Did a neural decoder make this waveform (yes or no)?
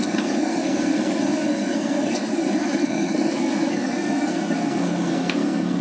yes